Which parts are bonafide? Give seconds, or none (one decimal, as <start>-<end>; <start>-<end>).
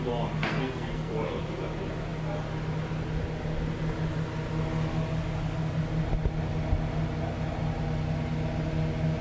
0.0-0.4; 1.4-9.2